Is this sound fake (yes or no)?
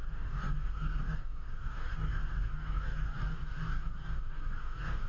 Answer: yes